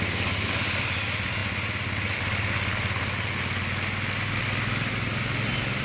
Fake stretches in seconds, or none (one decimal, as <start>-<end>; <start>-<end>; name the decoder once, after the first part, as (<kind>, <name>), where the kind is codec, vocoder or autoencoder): none